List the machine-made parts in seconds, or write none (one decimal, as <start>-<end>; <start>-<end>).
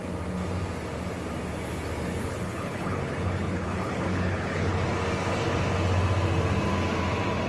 2.2-4.9